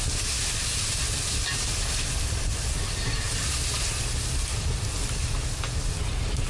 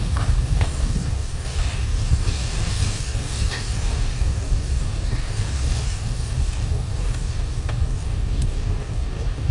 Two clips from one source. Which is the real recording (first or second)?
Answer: first